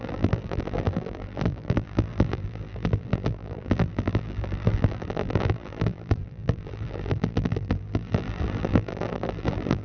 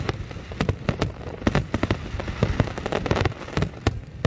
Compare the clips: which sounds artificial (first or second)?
first